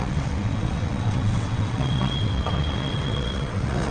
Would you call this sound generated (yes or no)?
yes